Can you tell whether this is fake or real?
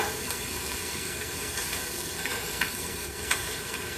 fake